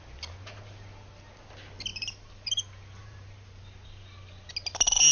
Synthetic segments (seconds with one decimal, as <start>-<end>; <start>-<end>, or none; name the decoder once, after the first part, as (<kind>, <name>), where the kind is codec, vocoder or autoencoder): 1.9-2.6 (vocoder, BigVGAN v2); 3.0-3.6